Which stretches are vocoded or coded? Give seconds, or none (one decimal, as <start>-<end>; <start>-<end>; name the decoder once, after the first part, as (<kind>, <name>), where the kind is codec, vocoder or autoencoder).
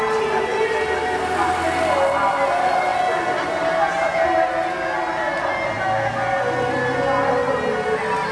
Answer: none